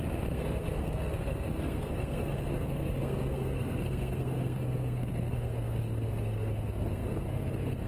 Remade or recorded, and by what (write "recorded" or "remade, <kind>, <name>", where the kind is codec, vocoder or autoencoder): remade, codec, SNAC